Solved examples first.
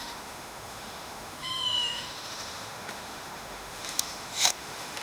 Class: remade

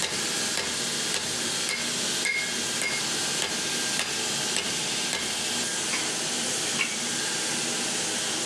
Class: recorded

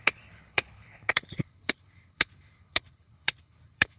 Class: remade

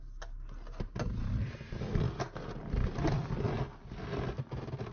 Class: recorded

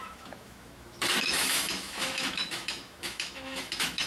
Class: remade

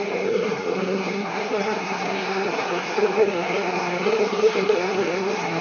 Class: remade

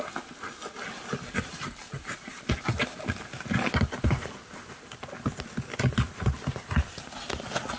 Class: recorded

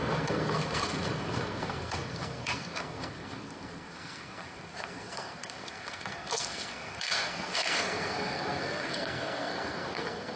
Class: remade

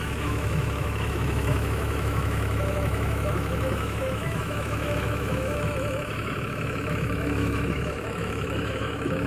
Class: remade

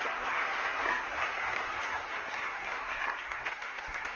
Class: remade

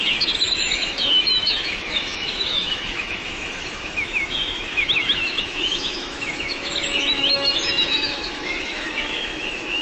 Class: remade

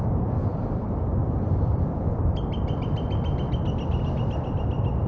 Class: recorded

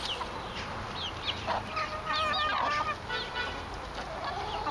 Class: recorded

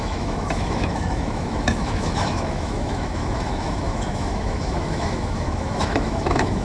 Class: remade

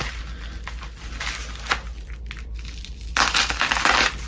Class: recorded